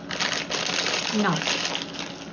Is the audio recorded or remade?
recorded